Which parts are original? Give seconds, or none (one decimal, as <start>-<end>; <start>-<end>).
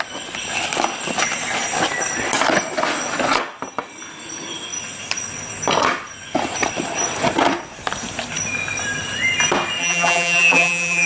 0.0-9.8